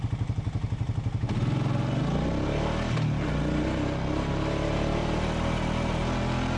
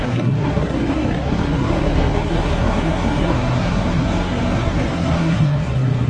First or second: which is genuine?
first